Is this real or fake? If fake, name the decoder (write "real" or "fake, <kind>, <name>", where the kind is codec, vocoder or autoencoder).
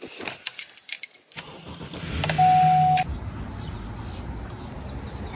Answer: real